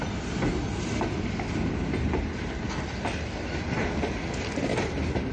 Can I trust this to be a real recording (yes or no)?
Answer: yes